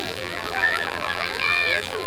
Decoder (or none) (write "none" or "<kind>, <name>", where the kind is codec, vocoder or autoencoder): vocoder, BigVGAN v2